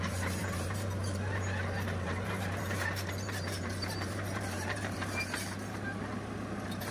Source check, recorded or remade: remade